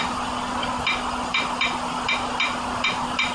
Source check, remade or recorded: recorded